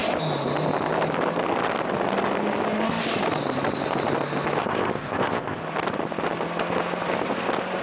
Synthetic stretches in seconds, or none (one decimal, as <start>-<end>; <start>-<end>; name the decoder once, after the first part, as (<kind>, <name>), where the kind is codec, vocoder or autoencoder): 4.6-5.6 (codec, ZipCodec)